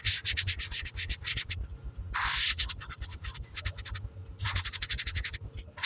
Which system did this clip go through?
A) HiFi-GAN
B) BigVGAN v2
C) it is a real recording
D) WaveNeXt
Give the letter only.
C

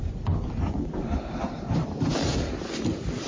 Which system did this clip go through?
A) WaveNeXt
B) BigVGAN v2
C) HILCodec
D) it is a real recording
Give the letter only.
D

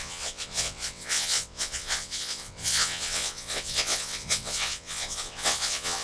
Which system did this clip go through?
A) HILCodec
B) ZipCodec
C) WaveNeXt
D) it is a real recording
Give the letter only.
C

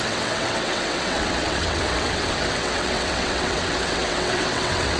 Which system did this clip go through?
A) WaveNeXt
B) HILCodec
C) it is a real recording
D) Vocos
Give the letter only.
A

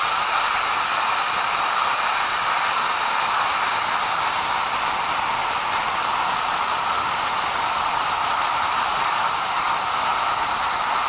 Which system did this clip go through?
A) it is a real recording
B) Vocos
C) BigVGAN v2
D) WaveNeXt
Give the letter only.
A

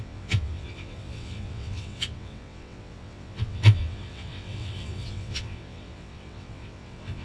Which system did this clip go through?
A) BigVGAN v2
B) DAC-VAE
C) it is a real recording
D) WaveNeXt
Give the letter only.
D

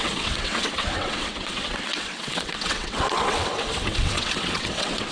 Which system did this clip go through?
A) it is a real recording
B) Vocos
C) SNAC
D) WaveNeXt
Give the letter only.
D